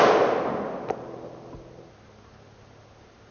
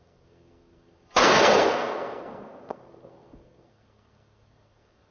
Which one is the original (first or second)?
first